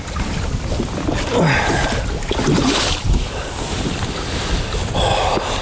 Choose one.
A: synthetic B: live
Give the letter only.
B